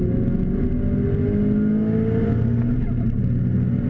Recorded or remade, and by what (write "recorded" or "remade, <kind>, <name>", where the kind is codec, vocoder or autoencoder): recorded